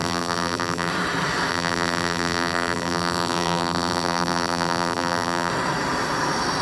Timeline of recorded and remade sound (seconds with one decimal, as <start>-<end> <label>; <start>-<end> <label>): 0.0-0.9 remade; 0.9-1.5 recorded; 1.5-5.5 remade; 5.5-6.6 recorded